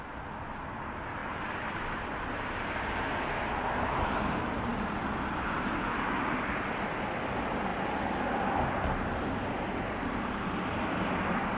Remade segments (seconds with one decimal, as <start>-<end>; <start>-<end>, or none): 1.2-1.8